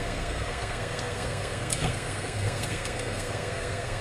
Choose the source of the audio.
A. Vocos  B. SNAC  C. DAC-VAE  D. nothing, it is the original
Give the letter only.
B